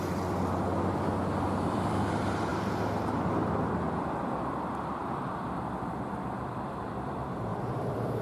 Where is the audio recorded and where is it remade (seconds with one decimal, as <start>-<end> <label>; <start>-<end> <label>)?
0.0-1.2 remade; 1.2-1.7 recorded; 1.7-2.5 remade; 2.5-4.4 recorded; 4.4-8.2 remade